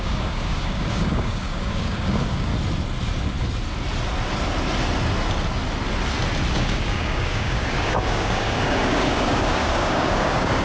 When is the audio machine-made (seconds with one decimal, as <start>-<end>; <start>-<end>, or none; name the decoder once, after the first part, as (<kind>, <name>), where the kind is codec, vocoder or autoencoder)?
0.0-2.5 (codec, DAC); 6.5-10.6